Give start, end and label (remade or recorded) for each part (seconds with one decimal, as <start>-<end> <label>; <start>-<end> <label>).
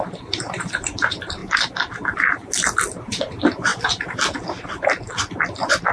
0.0-1.4 remade; 1.4-3.0 recorded; 3.0-3.7 remade; 3.7-5.9 recorded